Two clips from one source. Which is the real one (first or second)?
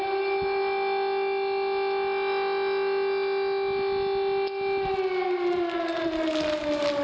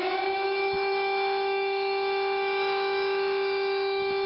first